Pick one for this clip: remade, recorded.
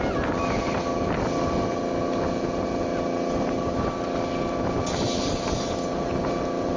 recorded